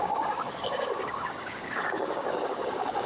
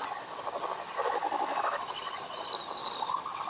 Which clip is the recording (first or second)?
second